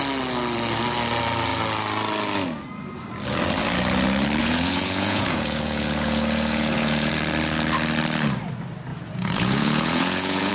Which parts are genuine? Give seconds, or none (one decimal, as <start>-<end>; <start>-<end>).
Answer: 0.0-4.4; 7.1-8.9